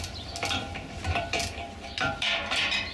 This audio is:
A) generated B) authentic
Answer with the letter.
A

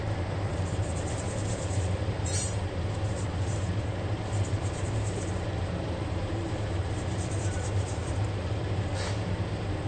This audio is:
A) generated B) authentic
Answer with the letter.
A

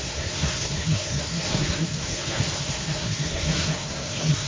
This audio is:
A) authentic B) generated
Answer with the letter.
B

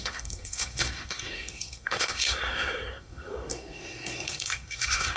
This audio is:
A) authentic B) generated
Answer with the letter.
B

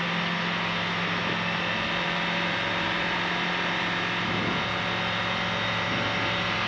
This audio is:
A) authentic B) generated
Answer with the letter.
A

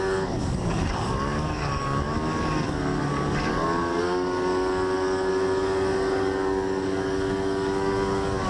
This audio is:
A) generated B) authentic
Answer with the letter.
A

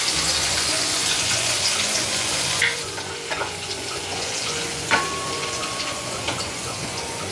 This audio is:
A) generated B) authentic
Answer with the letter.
A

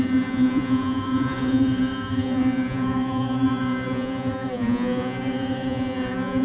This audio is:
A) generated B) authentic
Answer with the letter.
A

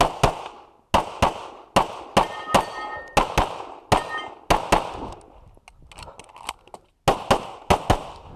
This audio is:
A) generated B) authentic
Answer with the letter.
B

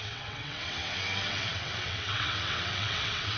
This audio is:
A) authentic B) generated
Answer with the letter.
B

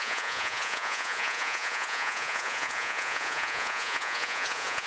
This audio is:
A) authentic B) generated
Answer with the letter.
B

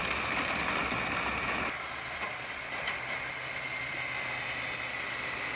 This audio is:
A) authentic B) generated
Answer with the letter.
A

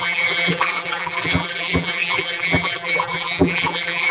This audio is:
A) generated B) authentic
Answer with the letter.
A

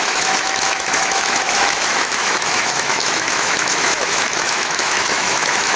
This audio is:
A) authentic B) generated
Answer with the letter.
B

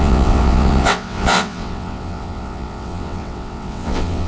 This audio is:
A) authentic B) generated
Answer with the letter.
B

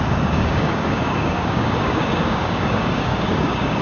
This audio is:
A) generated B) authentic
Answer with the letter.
A